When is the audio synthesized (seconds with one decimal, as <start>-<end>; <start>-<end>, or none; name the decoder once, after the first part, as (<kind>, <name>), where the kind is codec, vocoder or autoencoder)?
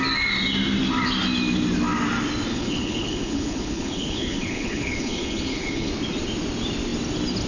2.5-5.9 (codec, HILCodec)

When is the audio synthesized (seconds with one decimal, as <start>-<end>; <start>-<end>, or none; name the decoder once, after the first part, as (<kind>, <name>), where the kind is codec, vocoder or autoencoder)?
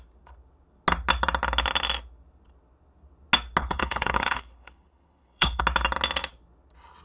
3.6-5.6 (codec, HILCodec)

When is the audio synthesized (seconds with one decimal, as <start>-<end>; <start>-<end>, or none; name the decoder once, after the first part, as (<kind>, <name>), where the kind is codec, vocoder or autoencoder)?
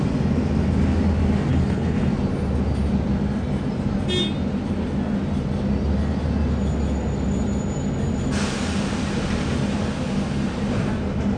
1.5-2.1 (codec, HILCodec)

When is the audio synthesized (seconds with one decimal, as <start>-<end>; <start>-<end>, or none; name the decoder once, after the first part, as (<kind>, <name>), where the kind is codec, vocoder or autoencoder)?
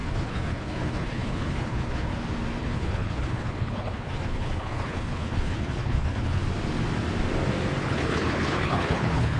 0.0-2.1 (codec, HILCodec); 2.6-6.4; 7.8-9.4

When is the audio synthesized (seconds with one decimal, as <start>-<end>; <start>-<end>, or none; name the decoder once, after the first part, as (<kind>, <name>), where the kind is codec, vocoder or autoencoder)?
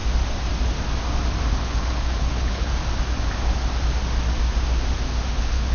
1.5-2.7 (codec, HILCodec); 5.3-5.7